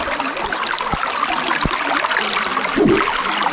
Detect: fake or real real